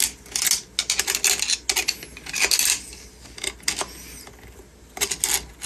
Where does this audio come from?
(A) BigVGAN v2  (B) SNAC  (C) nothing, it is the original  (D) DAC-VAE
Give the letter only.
C